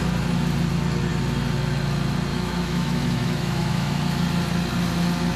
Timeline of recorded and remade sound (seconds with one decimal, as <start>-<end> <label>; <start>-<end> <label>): 0.0-2.3 recorded; 2.3-4.0 remade; 4.0-5.4 recorded